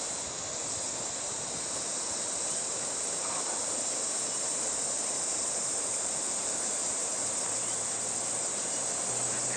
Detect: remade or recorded recorded